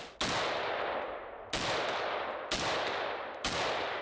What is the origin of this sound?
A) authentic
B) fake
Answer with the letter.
A